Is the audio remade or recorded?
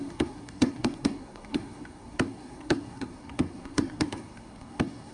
remade